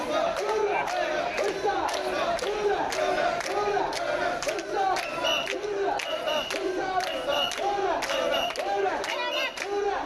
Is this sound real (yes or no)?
yes